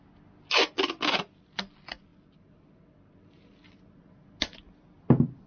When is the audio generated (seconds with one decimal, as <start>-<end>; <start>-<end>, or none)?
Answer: none